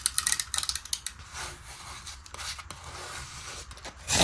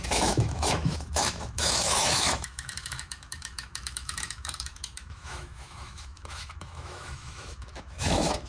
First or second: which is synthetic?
second